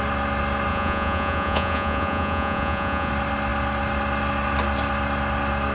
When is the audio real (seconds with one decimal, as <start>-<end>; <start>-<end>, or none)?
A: 0.0-0.7; 3.1-5.7

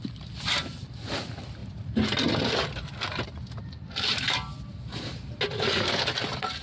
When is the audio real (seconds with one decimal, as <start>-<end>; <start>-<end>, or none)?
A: 0.0-6.6

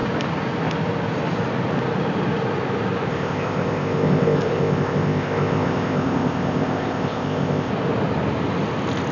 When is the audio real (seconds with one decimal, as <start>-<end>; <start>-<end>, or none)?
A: 0.0-3.1; 7.7-9.1

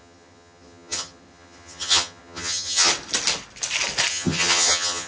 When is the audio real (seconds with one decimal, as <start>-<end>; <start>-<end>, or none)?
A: 2.9-4.1